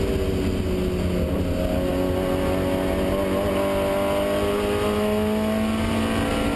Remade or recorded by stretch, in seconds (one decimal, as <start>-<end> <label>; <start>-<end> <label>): 0.0-6.6 recorded